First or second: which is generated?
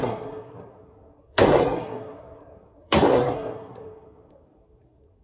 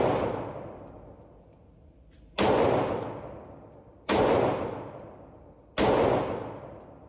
first